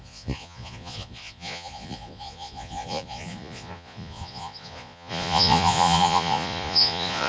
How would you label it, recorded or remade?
remade